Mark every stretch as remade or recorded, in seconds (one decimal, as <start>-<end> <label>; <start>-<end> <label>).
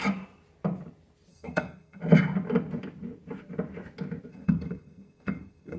0.0-1.3 recorded; 1.3-2.0 remade; 2.0-4.3 recorded; 4.3-5.8 remade